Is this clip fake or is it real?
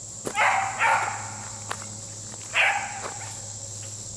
real